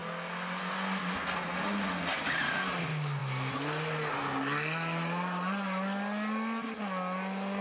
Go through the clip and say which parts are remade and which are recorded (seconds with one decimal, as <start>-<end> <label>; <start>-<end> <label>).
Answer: 0.0-7.6 recorded